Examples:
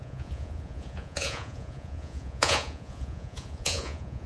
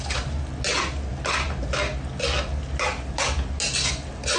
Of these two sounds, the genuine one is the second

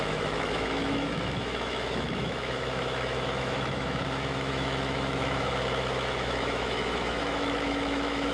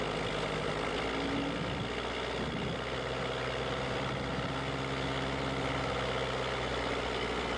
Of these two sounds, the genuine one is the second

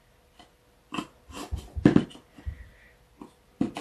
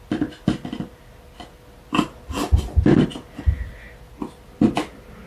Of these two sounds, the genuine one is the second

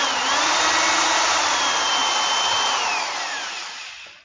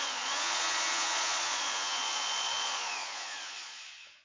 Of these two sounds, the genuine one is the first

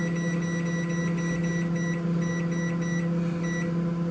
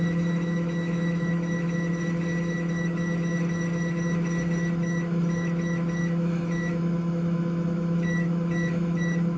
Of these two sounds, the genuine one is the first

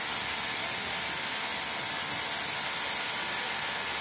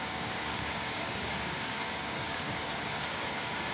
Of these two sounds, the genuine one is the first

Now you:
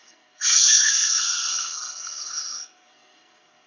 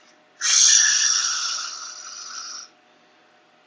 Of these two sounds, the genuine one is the second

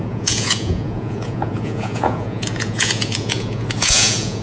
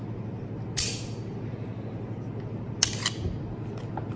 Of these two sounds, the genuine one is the second